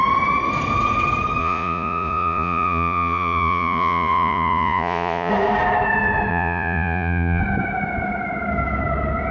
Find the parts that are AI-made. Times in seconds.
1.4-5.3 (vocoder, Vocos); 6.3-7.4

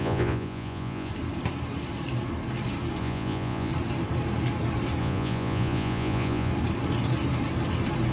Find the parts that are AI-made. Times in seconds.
0.0-1.1 (vocoder, Vocos); 3.0-3.7; 5.0-6.5

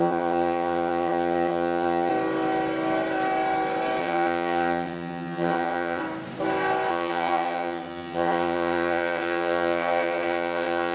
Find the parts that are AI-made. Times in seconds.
0.0-2.1 (vocoder, HiFi-GAN); 4.0-6.0; 6.9-10.9

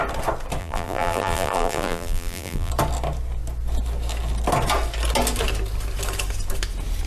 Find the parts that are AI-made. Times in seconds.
0.6-2.7 (vocoder, BigVGAN v2)